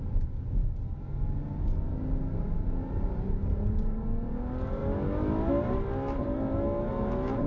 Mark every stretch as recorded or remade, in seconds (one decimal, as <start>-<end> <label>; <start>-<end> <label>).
0.0-7.5 recorded